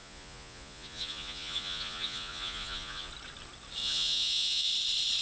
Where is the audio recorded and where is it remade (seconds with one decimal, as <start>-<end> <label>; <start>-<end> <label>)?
0.0-3.1 remade; 3.1-3.8 recorded; 3.8-4.7 remade; 4.7-5.2 recorded

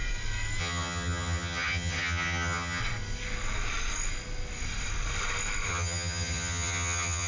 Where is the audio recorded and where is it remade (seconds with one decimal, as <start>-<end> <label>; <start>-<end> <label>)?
0.0-0.6 recorded; 0.6-2.8 remade; 2.8-5.7 recorded; 5.7-7.3 remade

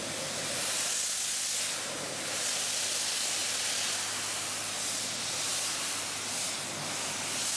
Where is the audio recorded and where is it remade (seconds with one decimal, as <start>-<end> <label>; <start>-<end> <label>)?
0.0-7.6 recorded

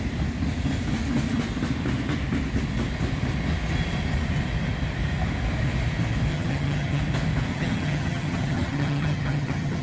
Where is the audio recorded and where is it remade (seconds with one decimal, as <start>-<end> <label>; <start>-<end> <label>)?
0.0-6.3 recorded; 6.3-7.0 remade; 7.0-7.5 recorded; 7.5-9.8 remade

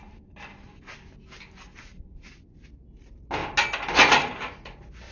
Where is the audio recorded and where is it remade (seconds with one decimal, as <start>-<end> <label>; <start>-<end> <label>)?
0.0-5.1 recorded

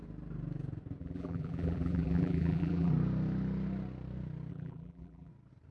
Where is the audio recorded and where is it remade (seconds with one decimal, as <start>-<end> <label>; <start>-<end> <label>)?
0.0-1.0 recorded; 1.0-2.9 remade; 2.9-4.5 recorded; 4.5-5.3 remade; 5.3-5.7 recorded

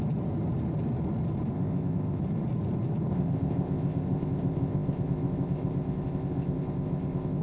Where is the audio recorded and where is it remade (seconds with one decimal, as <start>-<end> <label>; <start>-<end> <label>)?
0.0-1.5 recorded; 1.5-2.2 remade; 2.2-3.1 recorded; 3.1-7.4 remade

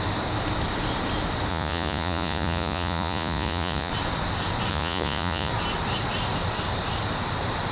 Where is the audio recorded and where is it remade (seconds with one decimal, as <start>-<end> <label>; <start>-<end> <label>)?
0.0-1.5 recorded; 1.5-3.9 remade; 3.9-4.7 recorded; 4.7-5.5 remade; 5.5-7.7 recorded